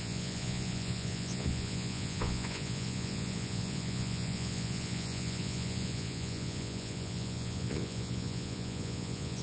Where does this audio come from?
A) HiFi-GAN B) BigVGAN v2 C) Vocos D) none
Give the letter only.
C